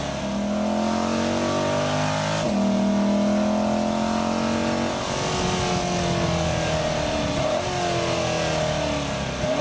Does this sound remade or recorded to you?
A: recorded